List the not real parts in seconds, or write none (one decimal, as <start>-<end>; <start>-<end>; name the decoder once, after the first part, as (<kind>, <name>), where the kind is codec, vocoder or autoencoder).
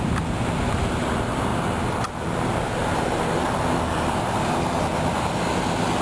none